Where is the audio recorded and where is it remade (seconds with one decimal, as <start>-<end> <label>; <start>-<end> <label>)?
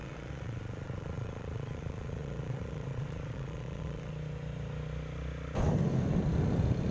0.0-4.1 remade; 4.1-6.9 recorded